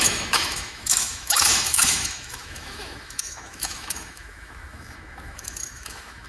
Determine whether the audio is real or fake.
fake